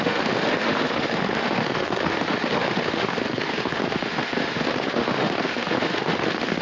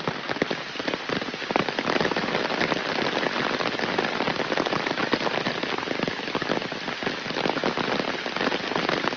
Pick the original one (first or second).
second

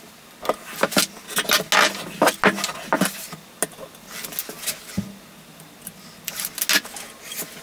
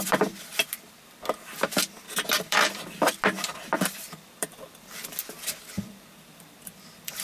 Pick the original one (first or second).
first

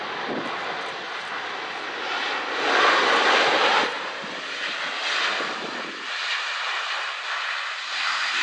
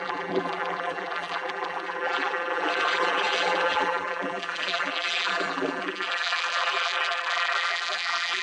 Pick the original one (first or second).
first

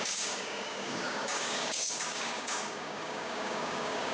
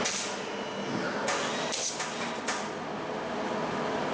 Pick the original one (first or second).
second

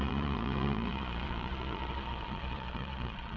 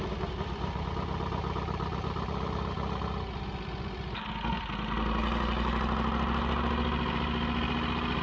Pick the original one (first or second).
second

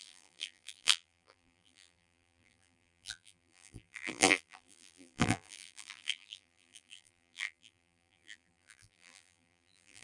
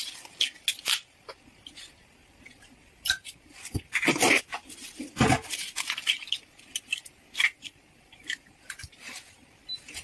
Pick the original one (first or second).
second